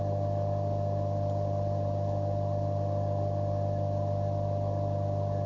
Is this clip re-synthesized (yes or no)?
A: no